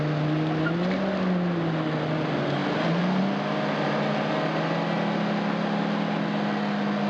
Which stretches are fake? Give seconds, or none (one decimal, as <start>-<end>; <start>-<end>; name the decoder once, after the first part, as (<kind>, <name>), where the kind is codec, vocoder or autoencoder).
none

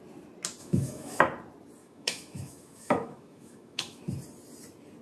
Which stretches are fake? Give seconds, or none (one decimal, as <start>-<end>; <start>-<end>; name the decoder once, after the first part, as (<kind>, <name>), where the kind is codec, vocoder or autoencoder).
0.6-1.2 (autoencoder, DAC-VAE); 1.8-4.0

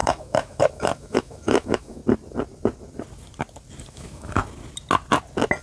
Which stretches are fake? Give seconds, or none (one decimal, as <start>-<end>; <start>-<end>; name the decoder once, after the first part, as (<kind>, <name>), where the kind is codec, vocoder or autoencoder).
0.0-2.0 (autoencoder, DAC-VAE); 3.9-4.4